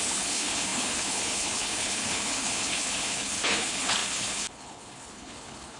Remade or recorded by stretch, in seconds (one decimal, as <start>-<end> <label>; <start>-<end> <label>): 0.0-5.8 remade